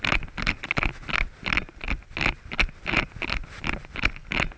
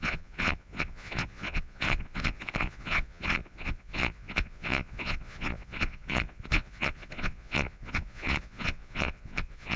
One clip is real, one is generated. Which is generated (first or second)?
second